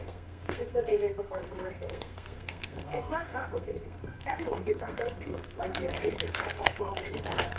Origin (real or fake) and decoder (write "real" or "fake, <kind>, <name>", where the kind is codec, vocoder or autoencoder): fake, codec, SNAC